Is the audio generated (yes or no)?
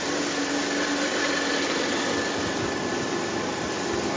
no